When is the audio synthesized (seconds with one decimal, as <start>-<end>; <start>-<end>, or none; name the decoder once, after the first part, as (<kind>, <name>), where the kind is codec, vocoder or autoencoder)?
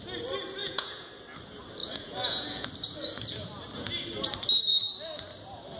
0.6-1.1 (vocoder, Vocos); 1.8-2.7